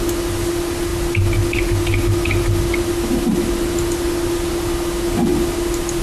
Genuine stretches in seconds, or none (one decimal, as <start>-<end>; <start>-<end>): 0.0-6.0